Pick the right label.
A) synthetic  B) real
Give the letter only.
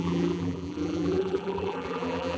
A